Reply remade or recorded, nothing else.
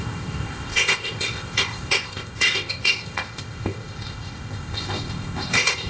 remade